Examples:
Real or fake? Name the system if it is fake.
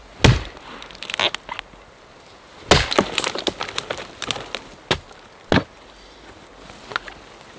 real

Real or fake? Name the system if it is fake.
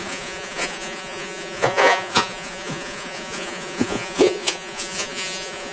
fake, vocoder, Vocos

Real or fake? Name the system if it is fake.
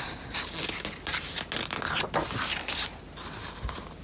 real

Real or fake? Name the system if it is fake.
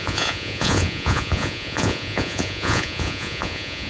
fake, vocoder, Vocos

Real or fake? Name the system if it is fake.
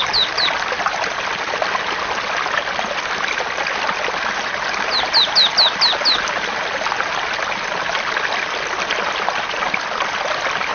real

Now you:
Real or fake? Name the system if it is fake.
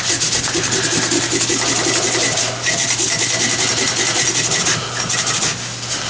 real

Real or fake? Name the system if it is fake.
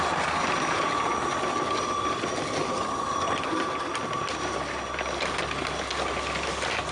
real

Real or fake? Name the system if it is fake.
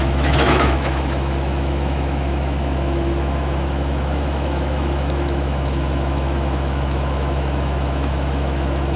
fake, autoencoder, DAC-VAE